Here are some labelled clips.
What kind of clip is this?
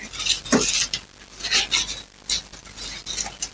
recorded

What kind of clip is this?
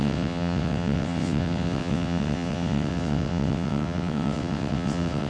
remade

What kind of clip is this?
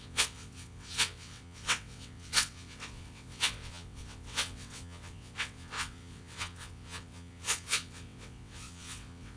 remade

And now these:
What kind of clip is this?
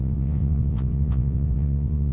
remade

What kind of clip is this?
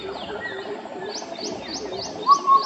recorded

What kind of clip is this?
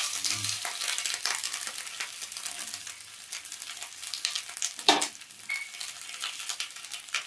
recorded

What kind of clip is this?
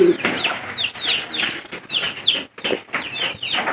recorded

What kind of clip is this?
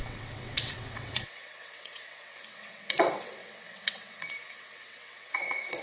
remade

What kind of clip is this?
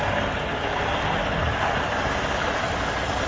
recorded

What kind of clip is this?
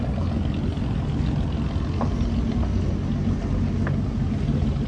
recorded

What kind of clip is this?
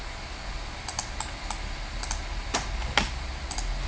recorded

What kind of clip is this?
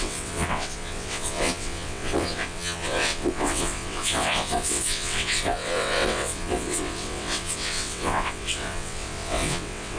remade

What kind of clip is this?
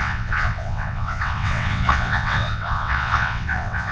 remade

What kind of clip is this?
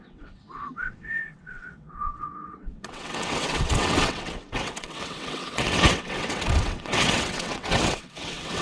remade